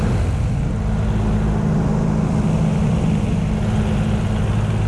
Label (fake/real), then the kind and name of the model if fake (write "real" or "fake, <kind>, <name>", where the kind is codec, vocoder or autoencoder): real